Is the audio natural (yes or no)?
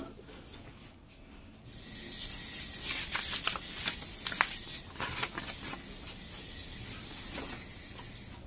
yes